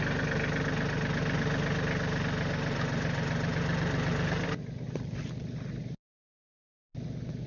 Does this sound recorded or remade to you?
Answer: recorded